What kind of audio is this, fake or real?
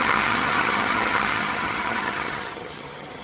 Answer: fake